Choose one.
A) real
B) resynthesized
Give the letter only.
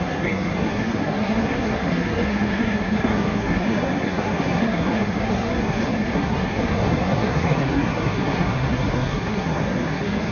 B